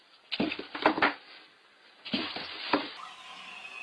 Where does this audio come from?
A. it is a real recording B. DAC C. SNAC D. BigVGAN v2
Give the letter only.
A